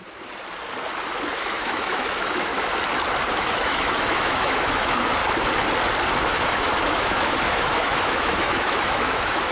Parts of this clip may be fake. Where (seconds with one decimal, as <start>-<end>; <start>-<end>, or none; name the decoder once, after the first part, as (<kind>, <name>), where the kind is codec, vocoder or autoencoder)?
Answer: 1.3-2.5 (autoencoder, DAC-VAE); 3.4-5.2; 6.2-9.5